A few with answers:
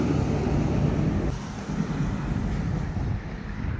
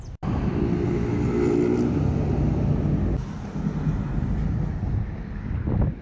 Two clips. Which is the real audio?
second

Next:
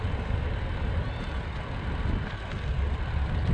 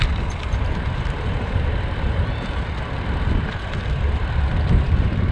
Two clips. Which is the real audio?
first